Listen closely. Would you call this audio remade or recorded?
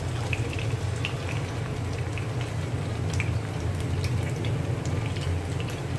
remade